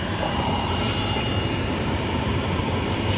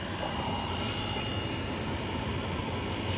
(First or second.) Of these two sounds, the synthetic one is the first